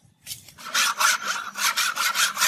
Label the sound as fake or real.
fake